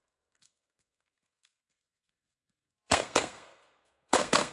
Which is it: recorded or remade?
remade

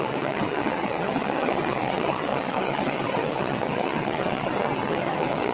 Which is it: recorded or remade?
remade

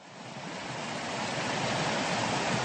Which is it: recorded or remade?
recorded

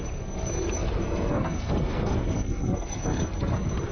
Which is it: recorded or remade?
remade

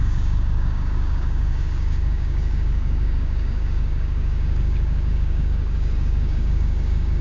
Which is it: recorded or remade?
remade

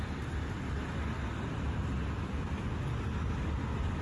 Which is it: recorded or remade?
recorded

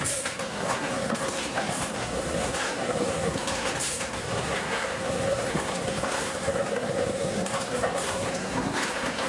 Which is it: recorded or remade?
remade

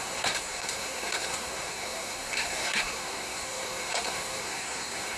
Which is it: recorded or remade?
remade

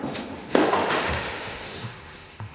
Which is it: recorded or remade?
remade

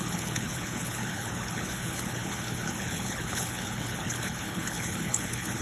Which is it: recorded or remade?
remade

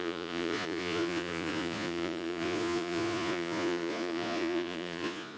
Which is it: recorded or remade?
remade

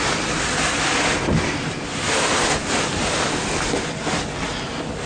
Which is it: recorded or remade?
recorded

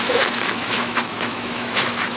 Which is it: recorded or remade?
remade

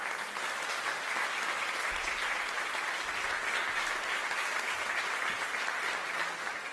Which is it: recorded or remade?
recorded